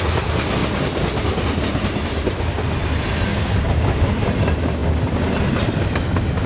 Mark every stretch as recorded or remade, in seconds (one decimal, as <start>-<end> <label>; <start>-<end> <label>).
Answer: 0.0-3.3 recorded; 3.3-4.1 remade; 4.1-6.5 recorded

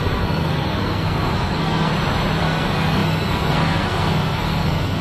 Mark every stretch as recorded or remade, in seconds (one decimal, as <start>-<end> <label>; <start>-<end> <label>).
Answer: 0.0-1.9 remade; 1.9-2.4 recorded; 2.4-5.0 remade

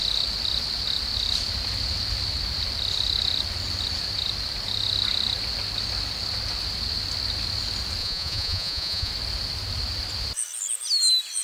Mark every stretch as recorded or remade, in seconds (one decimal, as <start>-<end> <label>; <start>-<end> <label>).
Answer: 0.0-8.0 recorded; 8.0-9.1 remade; 9.1-11.4 recorded

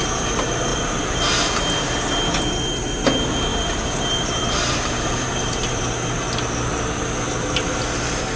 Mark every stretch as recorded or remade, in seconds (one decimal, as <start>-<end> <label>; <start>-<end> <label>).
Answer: 0.0-0.7 recorded; 0.7-1.2 remade; 1.2-3.5 recorded; 3.5-5.8 remade; 5.8-8.4 recorded

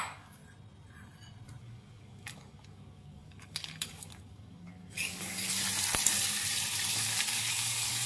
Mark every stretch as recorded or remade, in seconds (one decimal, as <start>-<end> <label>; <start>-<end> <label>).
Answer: 0.0-0.4 remade; 0.4-1.6 recorded; 1.6-5.6 remade; 5.6-6.9 recorded; 6.9-8.1 remade